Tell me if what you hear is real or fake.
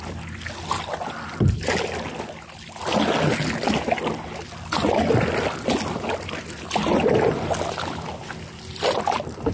real